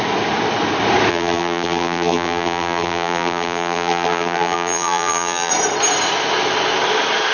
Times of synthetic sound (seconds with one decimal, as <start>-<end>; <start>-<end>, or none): 1.1-5.5